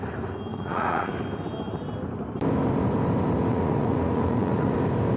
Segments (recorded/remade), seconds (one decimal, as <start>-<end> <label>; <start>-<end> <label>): 0.0-0.5 recorded; 0.5-1.1 remade; 1.1-3.5 recorded; 3.5-4.7 remade; 4.7-5.2 recorded